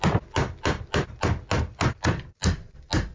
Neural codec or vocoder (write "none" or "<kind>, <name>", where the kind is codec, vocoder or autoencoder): none